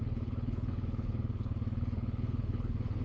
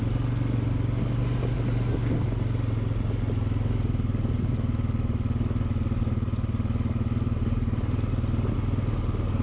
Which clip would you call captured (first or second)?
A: second